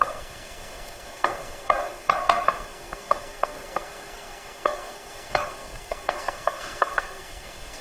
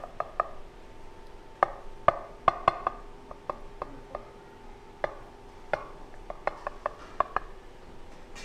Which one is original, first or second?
second